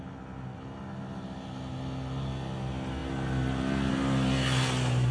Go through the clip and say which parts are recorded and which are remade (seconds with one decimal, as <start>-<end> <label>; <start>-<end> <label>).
0.0-5.1 recorded